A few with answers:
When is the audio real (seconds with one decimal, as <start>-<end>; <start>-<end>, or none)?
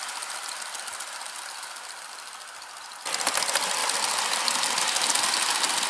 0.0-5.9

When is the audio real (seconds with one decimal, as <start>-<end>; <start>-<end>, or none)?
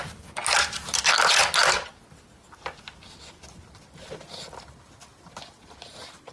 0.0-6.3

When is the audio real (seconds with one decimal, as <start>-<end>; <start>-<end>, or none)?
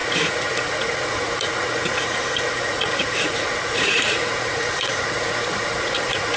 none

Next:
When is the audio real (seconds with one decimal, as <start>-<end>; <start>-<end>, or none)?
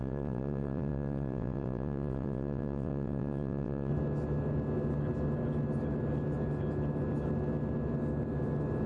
3.9-8.9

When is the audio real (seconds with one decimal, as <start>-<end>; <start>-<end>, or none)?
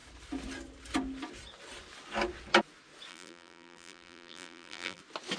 0.0-3.1; 5.0-5.4